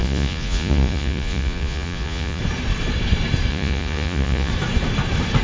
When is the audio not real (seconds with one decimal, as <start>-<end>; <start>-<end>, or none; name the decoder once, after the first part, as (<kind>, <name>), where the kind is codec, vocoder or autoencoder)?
0.0-2.4 (vocoder, Vocos); 3.5-4.5